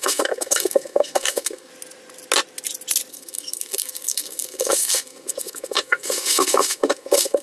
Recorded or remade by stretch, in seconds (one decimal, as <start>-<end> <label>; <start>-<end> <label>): 0.0-1.7 remade; 1.7-3.1 recorded; 3.1-7.4 remade